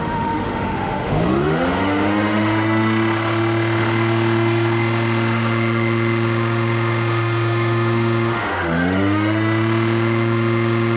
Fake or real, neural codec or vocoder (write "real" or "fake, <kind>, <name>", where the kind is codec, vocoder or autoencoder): fake, autoencoder, DAC-VAE